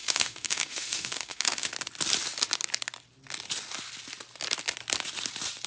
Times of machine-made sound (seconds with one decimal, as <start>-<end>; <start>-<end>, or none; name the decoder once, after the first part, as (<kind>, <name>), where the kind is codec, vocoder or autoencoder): 0.0-1.7 (autoencoder, DAC-VAE)